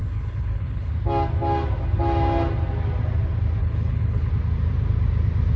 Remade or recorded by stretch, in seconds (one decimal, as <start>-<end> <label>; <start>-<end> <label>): 0.0-0.9 remade; 0.9-3.6 recorded; 3.6-4.3 remade; 4.3-5.6 recorded